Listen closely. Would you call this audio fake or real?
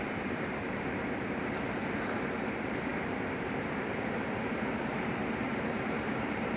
fake